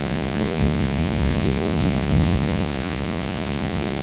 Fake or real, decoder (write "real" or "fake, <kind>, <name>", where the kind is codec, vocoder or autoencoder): fake, vocoder, Vocos